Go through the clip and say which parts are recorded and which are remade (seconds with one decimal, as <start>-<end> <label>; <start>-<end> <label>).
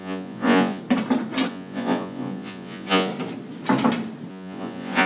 0.0-0.8 remade; 0.8-1.5 recorded; 1.5-3.1 remade; 3.1-4.3 recorded; 4.3-5.1 remade